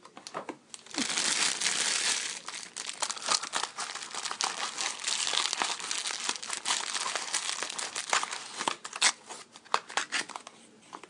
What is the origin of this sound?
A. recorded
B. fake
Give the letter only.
A